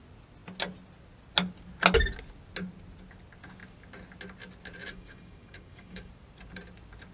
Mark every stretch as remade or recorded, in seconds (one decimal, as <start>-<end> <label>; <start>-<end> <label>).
0.0-4.9 recorded; 4.9-6.1 remade; 6.1-7.1 recorded